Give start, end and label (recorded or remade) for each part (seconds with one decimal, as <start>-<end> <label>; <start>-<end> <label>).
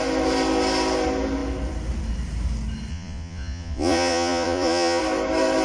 0.0-2.9 recorded; 2.9-5.0 remade; 5.0-5.6 recorded